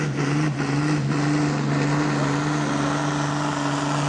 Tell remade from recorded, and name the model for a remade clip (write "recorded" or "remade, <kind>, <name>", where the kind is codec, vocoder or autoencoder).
recorded